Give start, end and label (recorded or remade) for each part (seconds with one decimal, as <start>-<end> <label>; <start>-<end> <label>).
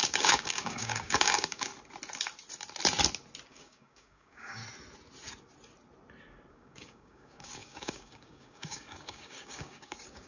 0.0-1.7 remade; 1.7-3.5 recorded; 3.5-4.6 remade; 4.6-6.5 recorded; 6.5-10.3 remade